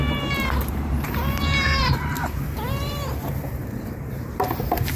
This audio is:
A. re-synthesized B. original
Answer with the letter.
A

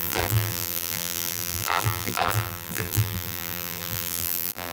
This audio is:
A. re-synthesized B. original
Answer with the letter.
A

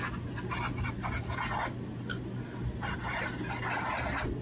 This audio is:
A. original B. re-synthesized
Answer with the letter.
A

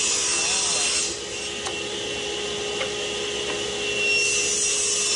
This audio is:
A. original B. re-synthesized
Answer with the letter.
A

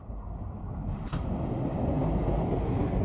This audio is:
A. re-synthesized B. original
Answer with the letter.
B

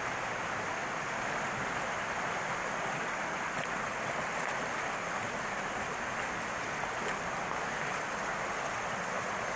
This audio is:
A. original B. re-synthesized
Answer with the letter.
A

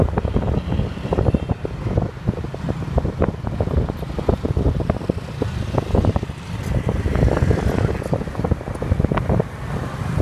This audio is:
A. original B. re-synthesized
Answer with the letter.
A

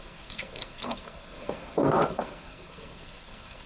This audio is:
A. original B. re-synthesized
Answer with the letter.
B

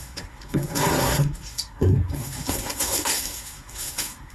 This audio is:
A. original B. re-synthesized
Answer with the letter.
B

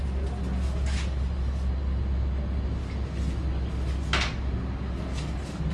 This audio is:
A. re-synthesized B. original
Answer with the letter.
B